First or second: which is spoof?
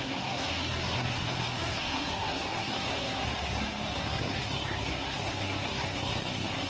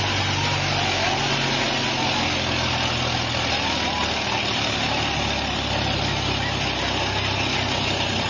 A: first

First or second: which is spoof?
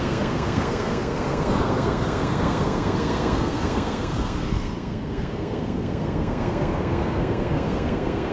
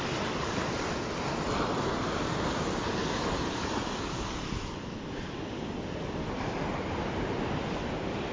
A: first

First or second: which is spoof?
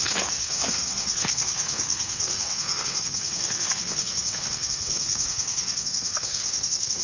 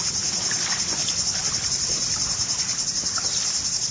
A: first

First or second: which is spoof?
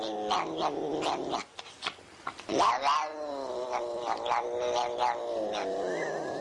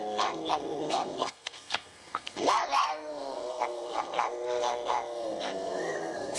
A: second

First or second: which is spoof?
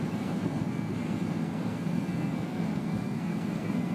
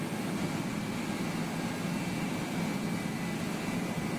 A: first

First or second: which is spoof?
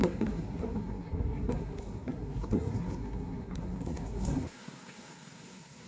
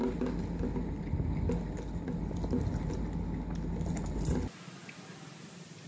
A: first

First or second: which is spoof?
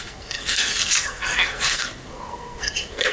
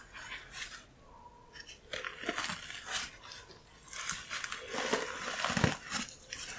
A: first